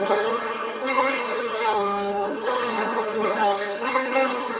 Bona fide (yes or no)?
no